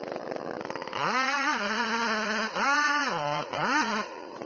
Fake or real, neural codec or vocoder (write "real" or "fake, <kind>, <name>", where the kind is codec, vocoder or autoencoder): fake, vocoder, Vocos